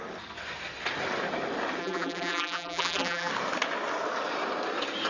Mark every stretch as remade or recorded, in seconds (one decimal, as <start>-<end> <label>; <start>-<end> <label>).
0.0-1.8 recorded; 1.8-3.3 remade; 3.3-5.1 recorded